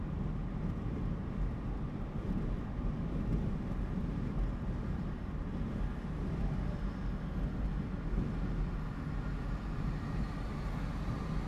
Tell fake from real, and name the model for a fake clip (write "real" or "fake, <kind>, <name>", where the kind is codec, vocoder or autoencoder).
real